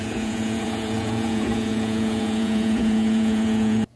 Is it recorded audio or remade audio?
remade